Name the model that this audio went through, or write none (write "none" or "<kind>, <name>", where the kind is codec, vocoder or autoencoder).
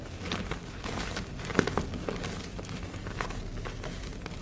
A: none